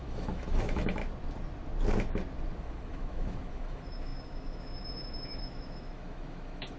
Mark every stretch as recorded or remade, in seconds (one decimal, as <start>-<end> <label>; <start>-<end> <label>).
0.0-1.0 remade; 1.0-2.6 recorded; 2.6-6.8 remade

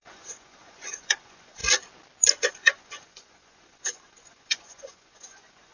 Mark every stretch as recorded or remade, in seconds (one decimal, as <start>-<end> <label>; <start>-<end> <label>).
0.0-1.6 remade; 1.6-2.5 recorded; 2.5-5.7 remade

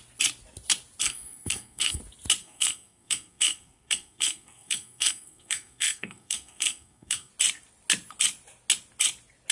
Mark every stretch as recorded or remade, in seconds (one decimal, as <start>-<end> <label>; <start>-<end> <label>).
0.0-1.0 recorded; 1.0-2.0 remade; 2.0-2.4 recorded; 2.4-7.3 remade; 7.3-9.5 recorded

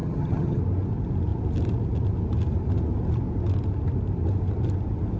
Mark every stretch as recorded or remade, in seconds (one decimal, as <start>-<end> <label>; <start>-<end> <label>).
0.0-0.6 remade; 0.6-5.2 recorded